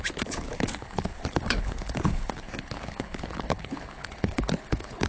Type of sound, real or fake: fake